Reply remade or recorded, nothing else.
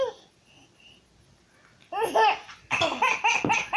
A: recorded